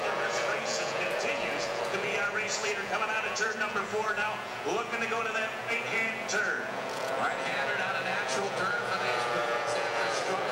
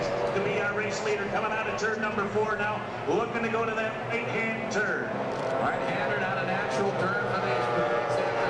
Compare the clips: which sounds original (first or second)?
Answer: second